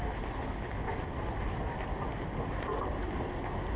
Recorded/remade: recorded